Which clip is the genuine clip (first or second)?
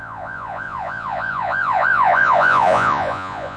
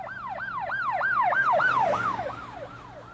second